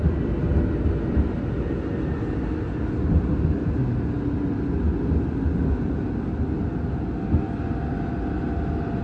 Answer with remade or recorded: recorded